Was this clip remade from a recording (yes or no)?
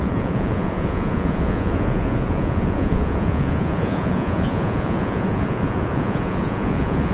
yes